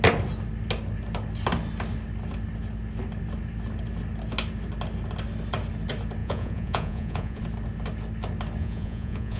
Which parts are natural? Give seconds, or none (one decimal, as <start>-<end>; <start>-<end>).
0.0-6.2; 7.4-8.6